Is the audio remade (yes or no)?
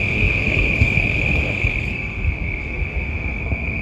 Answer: yes